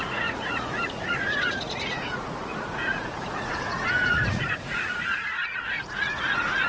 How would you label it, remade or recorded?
remade